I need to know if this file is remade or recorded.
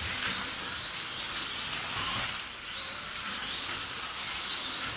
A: recorded